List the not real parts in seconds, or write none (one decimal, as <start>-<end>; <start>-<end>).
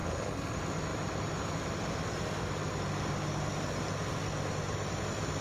0.0-0.5; 0.9-4.1